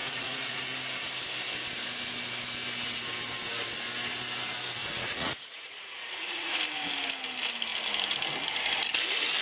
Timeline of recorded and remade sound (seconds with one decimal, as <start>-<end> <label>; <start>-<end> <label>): 0.0-0.6 remade; 0.6-4.8 recorded; 4.8-6.6 remade; 6.6-9.4 recorded